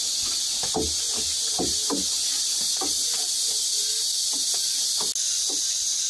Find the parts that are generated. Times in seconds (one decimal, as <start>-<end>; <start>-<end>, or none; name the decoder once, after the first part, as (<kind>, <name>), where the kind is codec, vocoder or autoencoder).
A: none